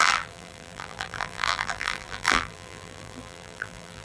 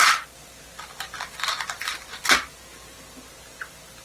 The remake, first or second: first